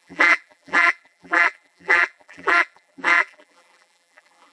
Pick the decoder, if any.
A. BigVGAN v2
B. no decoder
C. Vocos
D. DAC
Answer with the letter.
A